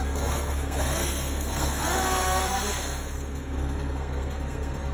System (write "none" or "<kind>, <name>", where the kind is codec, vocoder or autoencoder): codec, SNAC